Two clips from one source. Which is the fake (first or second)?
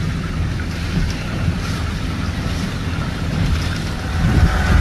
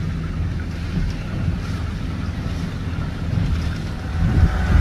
first